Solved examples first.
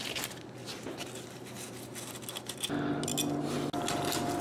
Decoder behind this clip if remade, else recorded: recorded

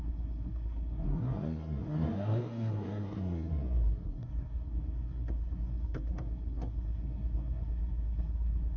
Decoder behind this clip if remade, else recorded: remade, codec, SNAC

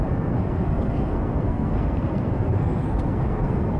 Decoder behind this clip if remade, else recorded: remade, codec, SNAC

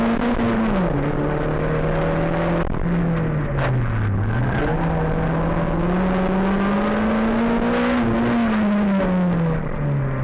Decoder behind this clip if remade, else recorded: recorded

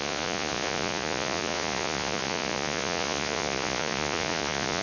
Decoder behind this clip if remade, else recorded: remade, vocoder, Vocos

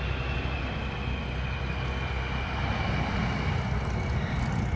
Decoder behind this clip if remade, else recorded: recorded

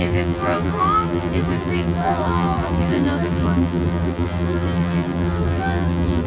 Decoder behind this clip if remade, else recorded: remade, vocoder, BigVGAN v2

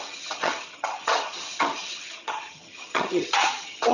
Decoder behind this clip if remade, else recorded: remade, vocoder, HiFi-GAN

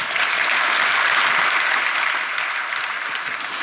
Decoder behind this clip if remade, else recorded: recorded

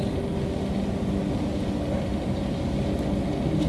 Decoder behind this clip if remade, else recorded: recorded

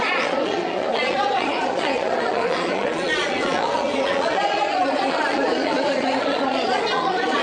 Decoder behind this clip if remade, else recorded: remade, vocoder, Vocos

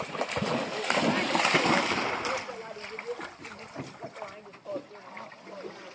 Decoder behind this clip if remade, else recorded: recorded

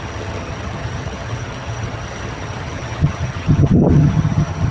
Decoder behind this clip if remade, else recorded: remade, vocoder, HiFi-GAN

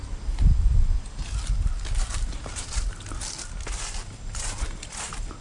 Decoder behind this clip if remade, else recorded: recorded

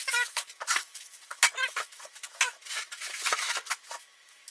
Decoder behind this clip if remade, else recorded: remade, autoencoder, DAC-VAE